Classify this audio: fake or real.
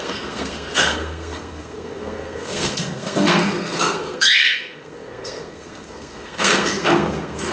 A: fake